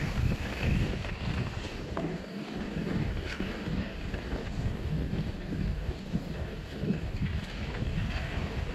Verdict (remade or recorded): remade